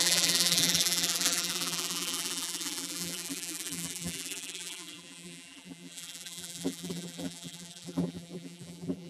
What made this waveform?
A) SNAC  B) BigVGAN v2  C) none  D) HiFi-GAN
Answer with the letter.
B